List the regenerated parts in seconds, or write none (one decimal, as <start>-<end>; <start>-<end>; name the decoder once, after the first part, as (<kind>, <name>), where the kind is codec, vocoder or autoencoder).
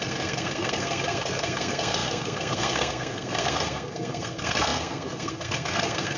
0.0-6.2 (codec, SNAC)